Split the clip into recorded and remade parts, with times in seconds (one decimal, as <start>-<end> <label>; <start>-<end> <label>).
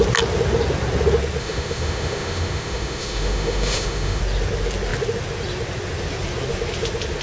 0.0-1.4 recorded; 1.4-4.2 remade; 4.2-7.2 recorded